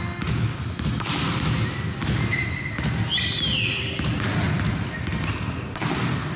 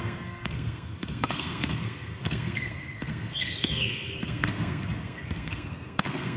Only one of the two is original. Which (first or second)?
first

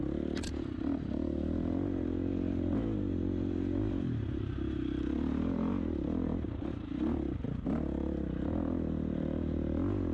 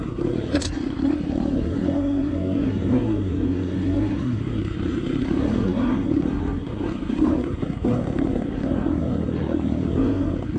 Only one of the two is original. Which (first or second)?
first